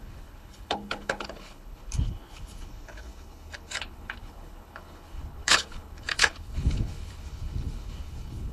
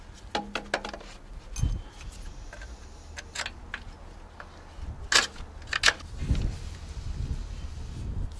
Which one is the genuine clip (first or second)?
second